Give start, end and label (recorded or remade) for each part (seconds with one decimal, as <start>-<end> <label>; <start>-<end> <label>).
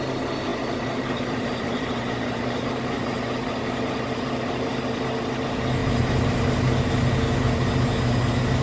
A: 0.0-0.5 recorded; 0.5-4.7 remade; 4.7-5.8 recorded; 5.8-7.1 remade; 7.1-8.6 recorded